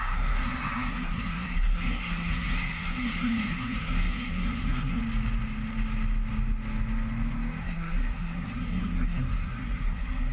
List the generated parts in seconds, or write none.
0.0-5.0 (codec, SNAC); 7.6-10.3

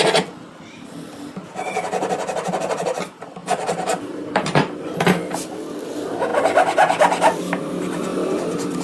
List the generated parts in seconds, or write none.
3.4-5.5 (vocoder, BigVGAN v2)